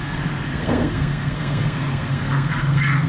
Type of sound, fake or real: fake